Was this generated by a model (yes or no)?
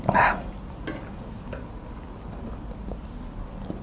no